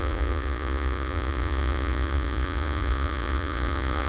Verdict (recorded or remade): remade